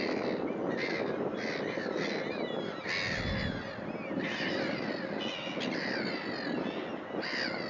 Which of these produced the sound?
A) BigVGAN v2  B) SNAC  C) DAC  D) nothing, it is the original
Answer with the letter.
D